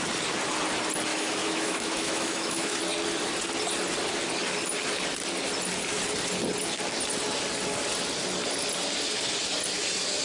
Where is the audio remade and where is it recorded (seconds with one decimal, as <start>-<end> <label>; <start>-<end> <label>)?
0.0-1.1 recorded; 1.1-2.8 remade; 2.8-10.2 recorded